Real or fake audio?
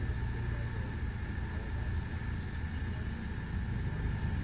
real